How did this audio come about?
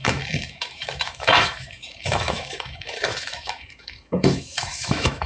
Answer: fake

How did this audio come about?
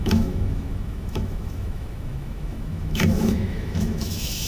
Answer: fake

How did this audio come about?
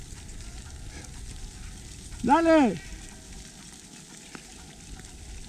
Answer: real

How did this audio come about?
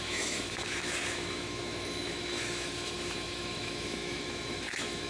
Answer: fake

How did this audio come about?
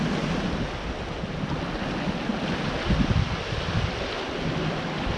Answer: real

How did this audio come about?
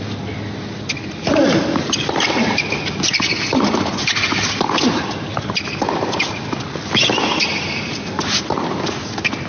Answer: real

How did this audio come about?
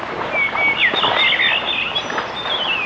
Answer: real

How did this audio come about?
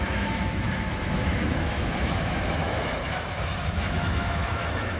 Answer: fake